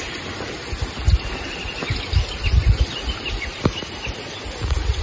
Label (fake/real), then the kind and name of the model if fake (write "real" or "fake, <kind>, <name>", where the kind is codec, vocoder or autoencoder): real